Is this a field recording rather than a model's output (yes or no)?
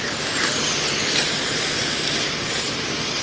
yes